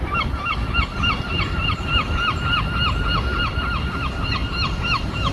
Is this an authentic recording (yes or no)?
yes